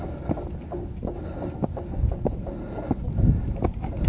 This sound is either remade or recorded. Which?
recorded